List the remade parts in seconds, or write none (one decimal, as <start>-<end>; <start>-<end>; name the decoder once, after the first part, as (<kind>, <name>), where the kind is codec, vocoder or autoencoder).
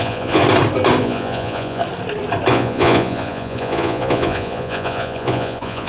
0.0-0.4 (vocoder, Vocos); 1.0-1.8; 2.5-5.9